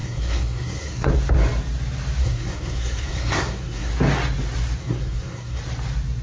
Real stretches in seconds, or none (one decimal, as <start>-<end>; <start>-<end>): 1.1-2.2; 3.9-4.8; 5.6-6.2